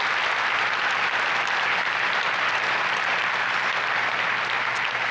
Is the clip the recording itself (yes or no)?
yes